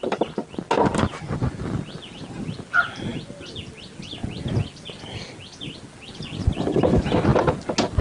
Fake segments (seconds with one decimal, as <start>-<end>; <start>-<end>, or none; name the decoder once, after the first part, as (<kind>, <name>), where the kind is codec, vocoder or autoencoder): none